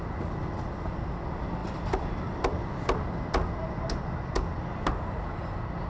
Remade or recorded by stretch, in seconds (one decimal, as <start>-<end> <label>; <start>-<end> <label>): 0.0-5.9 recorded